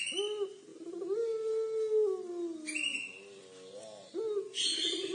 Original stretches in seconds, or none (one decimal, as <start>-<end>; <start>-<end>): 0.0-5.1